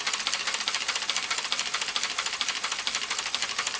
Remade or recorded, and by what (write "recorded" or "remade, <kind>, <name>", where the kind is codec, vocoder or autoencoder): recorded